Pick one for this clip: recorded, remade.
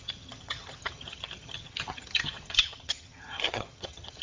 remade